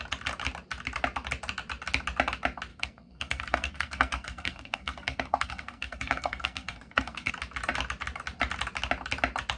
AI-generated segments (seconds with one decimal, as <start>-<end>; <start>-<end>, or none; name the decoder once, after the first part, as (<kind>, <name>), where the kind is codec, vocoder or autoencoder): 2.7-7.3 (codec, SNAC)